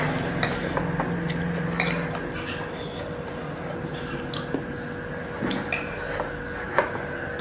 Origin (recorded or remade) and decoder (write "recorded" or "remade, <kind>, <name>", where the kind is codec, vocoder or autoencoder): recorded